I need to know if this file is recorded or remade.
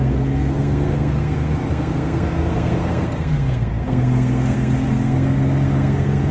remade